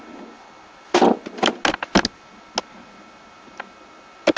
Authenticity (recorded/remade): recorded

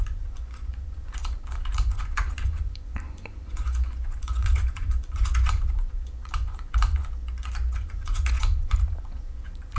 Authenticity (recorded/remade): remade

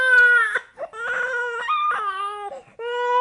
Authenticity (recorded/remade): recorded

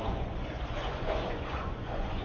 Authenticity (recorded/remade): remade